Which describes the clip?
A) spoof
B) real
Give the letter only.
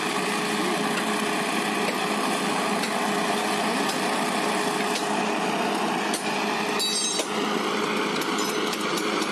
B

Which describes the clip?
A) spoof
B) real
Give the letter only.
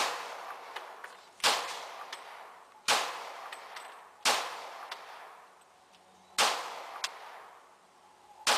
B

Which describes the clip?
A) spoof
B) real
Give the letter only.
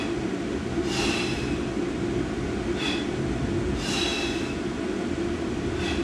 B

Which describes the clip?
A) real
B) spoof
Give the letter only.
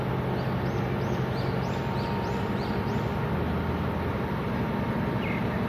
A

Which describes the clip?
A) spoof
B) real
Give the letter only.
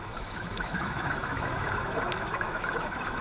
A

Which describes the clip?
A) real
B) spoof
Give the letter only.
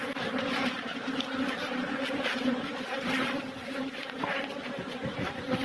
B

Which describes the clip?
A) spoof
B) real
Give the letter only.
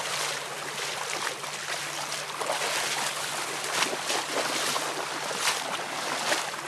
B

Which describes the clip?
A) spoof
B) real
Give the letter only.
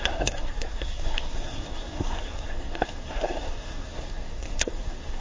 A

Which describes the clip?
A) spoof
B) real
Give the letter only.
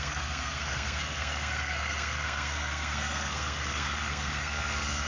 A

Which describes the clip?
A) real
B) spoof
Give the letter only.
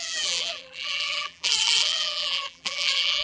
B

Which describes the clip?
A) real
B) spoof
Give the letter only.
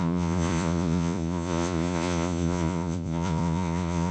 B